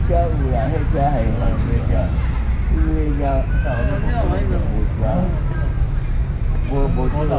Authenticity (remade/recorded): recorded